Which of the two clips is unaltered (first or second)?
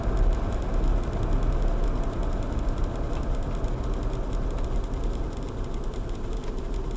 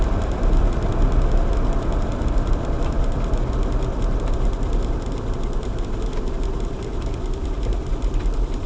first